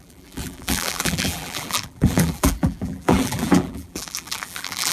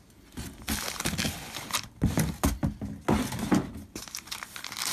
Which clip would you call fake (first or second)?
first